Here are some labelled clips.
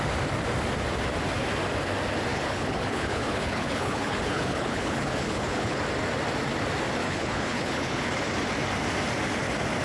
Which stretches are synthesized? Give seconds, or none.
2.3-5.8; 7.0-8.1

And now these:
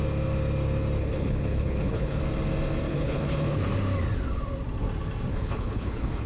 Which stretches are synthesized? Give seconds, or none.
1.0-2.2; 2.9-3.6; 5.3-6.3

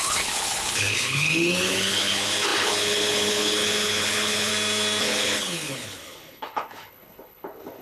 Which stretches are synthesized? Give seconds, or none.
0.0-4.5; 5.0-7.8

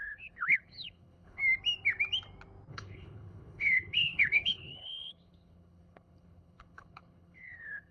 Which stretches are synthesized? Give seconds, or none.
0.0-1.4; 2.7-7.9